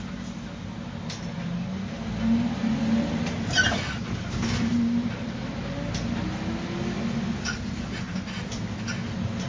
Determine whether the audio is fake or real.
real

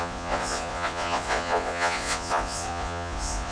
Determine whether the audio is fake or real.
fake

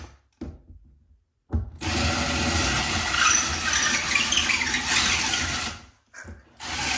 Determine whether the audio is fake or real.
real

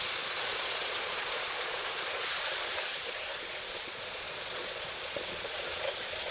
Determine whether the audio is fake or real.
fake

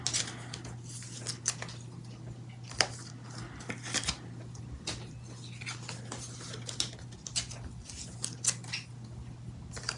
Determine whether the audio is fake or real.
real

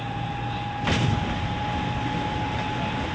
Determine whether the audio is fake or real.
real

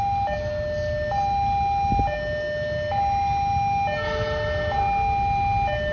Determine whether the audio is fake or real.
real